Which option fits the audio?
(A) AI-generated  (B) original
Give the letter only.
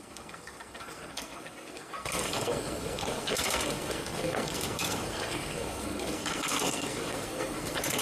A